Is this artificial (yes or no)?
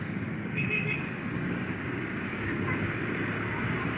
yes